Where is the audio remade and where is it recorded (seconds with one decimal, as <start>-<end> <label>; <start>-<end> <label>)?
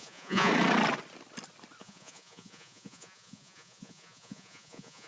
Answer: 0.0-0.5 remade; 0.5-1.8 recorded; 1.8-5.1 remade